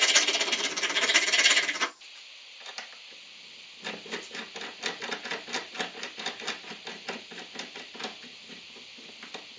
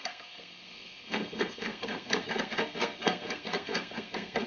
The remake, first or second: second